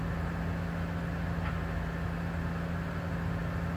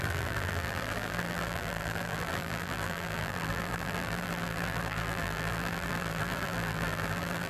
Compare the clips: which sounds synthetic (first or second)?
second